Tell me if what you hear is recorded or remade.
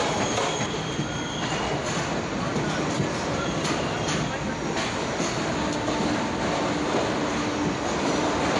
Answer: recorded